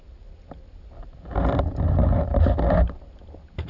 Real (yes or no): yes